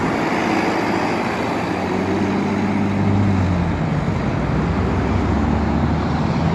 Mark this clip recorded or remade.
recorded